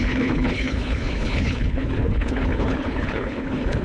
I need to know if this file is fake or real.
fake